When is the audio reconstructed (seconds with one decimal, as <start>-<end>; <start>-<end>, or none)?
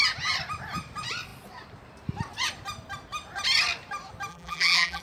4.3-5.0